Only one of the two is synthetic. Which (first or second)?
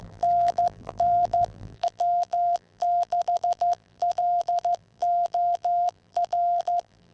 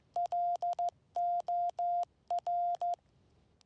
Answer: first